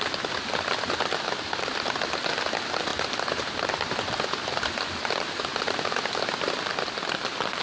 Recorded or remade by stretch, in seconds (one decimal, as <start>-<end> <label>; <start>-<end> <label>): 0.0-2.9 recorded; 2.9-7.1 remade; 7.1-7.6 recorded